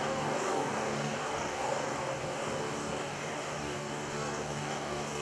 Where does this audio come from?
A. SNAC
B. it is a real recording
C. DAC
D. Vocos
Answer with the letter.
C